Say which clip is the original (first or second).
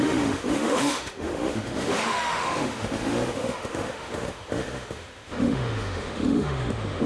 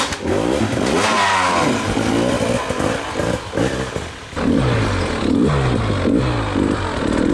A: second